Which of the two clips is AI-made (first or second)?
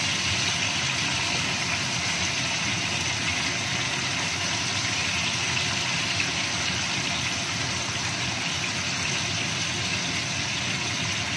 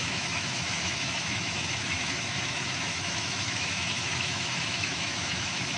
second